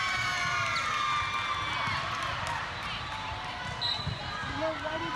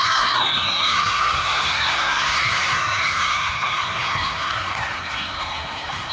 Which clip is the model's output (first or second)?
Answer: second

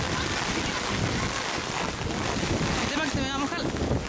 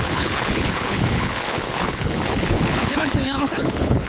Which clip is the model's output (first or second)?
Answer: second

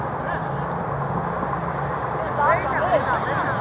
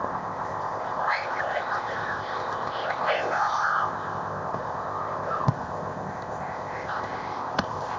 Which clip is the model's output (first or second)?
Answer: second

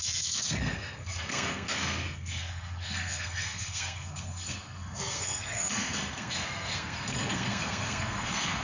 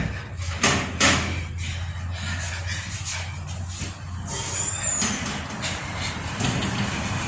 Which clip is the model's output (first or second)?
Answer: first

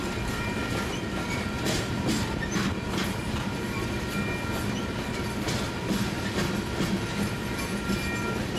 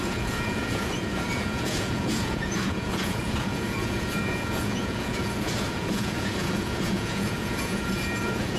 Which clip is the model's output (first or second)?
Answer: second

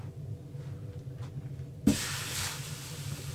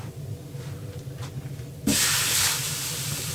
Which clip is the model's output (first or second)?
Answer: second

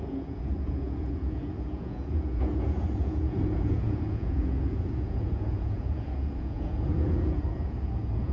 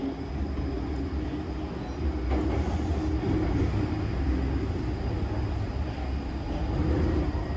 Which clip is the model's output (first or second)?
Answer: first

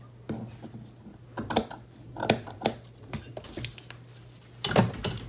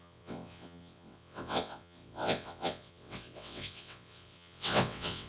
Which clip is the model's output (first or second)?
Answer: second